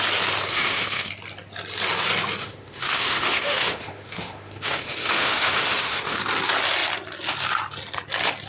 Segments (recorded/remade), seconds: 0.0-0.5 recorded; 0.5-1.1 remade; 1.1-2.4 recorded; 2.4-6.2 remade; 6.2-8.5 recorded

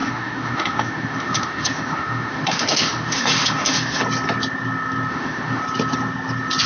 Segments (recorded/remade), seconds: 0.0-4.0 remade; 4.0-5.1 recorded; 5.1-5.6 remade; 5.6-6.7 recorded